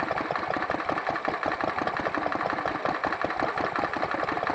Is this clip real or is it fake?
real